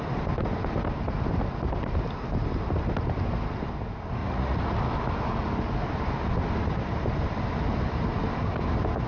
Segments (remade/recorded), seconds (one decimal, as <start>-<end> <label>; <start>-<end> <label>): 0.0-4.2 recorded; 4.2-4.8 remade; 4.8-9.1 recorded